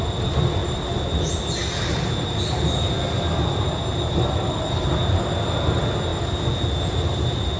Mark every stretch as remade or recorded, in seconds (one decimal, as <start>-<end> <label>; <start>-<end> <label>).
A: 0.0-7.6 recorded